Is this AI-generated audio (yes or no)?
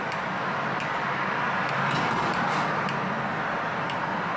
no